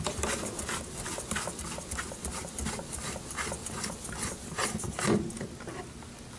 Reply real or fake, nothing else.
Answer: real